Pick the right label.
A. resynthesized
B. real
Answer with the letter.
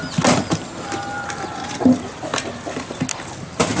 B